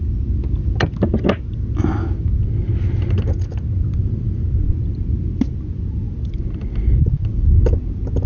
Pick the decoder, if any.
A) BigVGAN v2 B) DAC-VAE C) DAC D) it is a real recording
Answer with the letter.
D